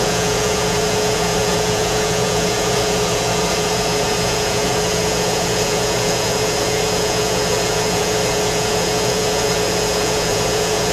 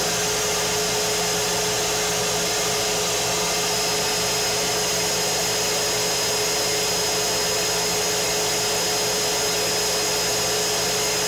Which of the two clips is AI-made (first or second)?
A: first